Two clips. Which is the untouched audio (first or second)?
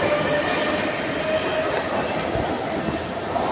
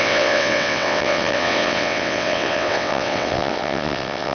first